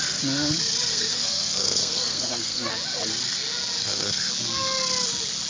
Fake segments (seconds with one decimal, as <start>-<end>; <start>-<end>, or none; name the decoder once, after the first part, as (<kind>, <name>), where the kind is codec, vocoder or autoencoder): 0.9-2.7 (codec, SNAC); 3.8-4.3